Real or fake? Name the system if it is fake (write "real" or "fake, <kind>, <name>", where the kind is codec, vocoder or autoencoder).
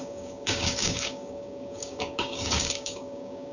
fake, codec, DAC